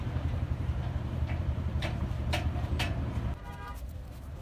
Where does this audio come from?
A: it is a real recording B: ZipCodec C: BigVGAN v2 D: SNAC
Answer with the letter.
C